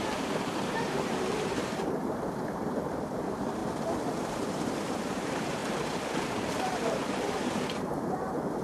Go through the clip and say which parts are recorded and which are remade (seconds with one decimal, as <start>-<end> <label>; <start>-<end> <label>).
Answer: 0.0-3.6 remade; 3.6-4.1 recorded; 4.1-5.6 remade; 5.6-6.2 recorded; 6.2-8.6 remade